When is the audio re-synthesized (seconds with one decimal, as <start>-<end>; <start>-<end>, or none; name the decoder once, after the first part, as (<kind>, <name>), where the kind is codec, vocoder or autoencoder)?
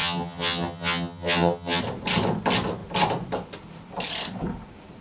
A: 0.0-1.8 (vocoder, HiFi-GAN)